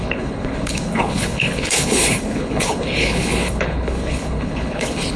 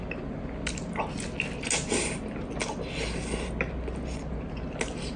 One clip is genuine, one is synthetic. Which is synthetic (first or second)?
first